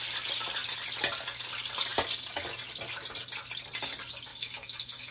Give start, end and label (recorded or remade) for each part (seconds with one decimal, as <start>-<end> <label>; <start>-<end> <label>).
0.0-4.3 recorded; 4.3-5.1 remade